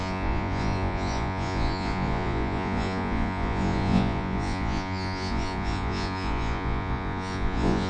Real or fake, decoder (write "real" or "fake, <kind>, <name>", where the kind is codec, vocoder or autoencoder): fake, vocoder, Vocos